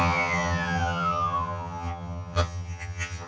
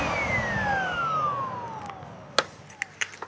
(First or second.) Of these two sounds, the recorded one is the second